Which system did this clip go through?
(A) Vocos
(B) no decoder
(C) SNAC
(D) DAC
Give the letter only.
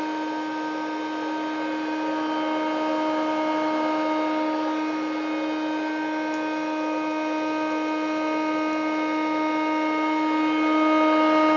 B